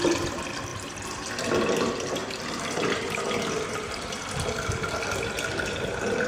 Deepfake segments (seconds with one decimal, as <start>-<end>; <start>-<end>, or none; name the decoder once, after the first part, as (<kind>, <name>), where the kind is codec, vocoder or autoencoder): 0.7-1.3 (vocoder, BigVGAN v2); 2.2-4.2